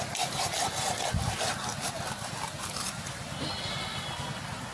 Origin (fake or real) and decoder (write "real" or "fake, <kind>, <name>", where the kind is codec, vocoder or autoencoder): real